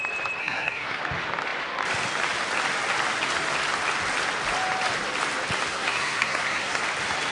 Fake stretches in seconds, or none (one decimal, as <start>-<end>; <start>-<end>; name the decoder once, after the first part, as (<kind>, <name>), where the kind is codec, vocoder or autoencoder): 0.4-1.0 (codec, SNAC); 5.7-6.8